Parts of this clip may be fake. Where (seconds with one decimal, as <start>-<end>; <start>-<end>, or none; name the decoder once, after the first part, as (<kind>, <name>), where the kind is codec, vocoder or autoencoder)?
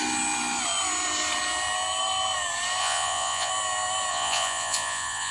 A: 2.8-3.5 (vocoder, Vocos); 4.1-5.3